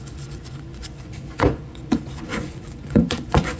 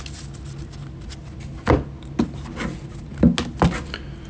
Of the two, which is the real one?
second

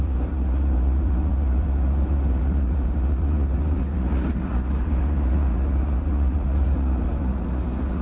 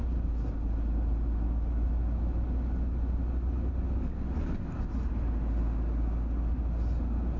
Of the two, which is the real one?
second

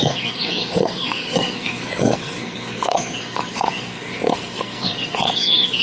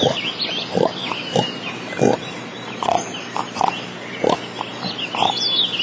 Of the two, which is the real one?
second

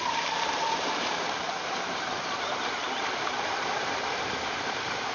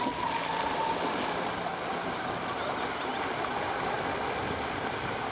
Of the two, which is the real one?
second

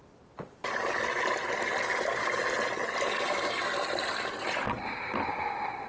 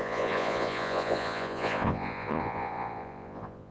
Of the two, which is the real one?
first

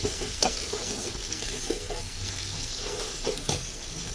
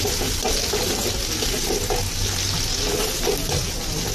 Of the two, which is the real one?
second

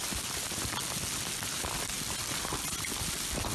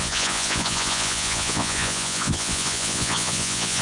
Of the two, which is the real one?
first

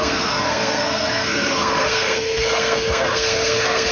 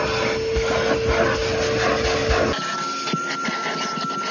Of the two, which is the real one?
second